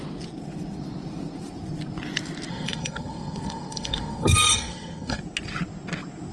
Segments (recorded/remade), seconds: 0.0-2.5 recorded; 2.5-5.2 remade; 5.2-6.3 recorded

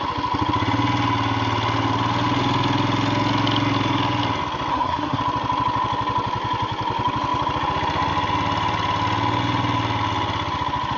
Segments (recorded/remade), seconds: 0.0-4.7 recorded; 4.7-5.2 remade; 5.2-11.0 recorded

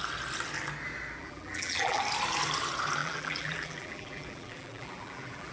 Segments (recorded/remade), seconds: 0.0-1.2 recorded; 1.2-2.0 remade; 2.0-3.0 recorded; 3.0-5.5 remade

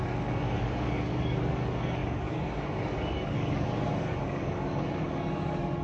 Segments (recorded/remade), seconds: 0.0-5.8 remade